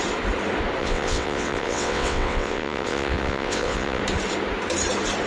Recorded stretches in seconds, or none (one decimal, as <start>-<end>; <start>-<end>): 0.0-0.8; 4.0-5.3